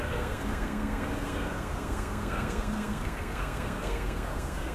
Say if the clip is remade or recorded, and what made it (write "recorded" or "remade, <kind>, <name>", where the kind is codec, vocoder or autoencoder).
remade, codec, SNAC